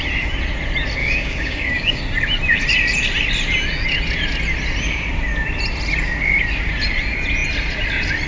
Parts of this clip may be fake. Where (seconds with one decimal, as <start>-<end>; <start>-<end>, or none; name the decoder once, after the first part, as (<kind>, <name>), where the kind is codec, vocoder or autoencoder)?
1.0-2.0 (codec, DAC)